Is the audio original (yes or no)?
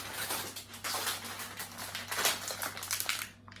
yes